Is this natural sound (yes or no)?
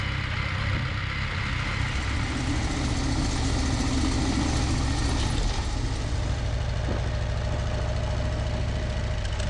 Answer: yes